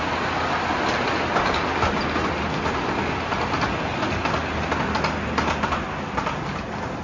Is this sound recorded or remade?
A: recorded